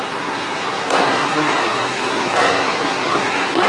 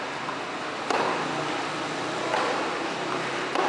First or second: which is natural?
second